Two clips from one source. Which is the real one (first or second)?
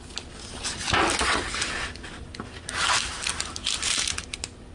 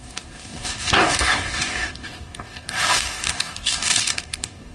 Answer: first